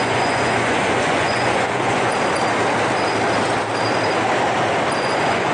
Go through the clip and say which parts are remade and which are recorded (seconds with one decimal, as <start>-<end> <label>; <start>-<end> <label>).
0.0-2.1 remade; 2.1-5.0 recorded; 5.0-5.5 remade